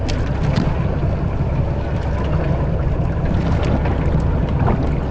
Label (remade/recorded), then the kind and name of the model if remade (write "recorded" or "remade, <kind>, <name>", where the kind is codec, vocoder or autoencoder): recorded